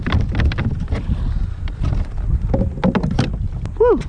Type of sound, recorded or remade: recorded